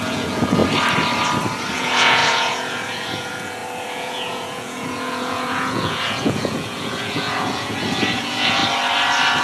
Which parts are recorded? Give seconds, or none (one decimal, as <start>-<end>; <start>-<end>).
0.6-1.7; 8.6-9.4